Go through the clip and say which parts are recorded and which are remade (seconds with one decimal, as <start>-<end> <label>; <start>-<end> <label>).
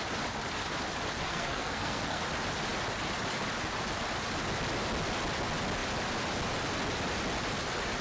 0.0-1.2 recorded; 1.2-2.2 remade; 2.2-8.0 recorded